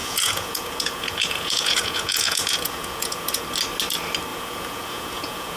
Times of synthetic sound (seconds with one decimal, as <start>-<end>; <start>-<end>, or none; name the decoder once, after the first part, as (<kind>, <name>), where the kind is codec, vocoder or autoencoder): 0.0-3.4 (vocoder, Vocos); 4.3-5.6

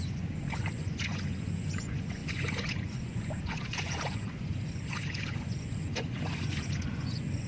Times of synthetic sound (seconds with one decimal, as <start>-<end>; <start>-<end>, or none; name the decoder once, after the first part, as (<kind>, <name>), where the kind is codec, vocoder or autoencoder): 0.0-7.5 (vocoder, Vocos)

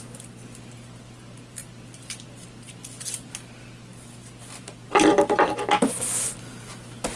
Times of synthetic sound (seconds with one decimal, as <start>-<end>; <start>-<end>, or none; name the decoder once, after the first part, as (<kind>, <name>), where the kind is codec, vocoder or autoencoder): none

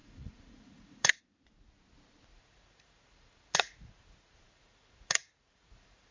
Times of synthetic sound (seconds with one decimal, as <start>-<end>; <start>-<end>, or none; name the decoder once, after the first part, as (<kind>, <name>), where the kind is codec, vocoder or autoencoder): 0.0-1.2 (vocoder, Vocos); 2.3-6.1

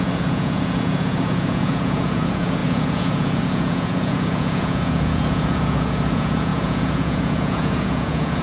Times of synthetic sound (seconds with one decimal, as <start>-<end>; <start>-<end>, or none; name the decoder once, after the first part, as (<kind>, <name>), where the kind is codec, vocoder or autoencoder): 0.0-8.4 (vocoder, Vocos)

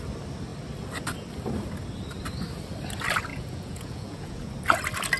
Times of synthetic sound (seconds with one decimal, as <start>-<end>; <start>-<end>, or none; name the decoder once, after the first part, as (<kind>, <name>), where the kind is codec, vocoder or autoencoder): 3.3-4.5 (vocoder, Vocos)

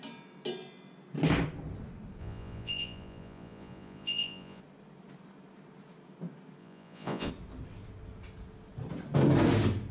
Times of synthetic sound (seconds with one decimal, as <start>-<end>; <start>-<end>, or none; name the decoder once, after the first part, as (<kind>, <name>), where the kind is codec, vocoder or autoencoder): 2.2-4.6 (vocoder, Vocos); 6.6-7.3

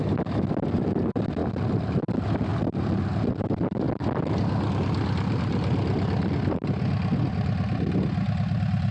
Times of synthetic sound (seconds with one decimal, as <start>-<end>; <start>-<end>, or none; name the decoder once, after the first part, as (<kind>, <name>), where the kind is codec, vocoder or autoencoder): none